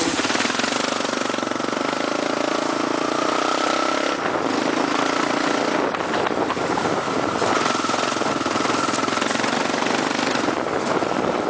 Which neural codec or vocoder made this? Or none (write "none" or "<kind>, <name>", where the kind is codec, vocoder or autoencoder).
none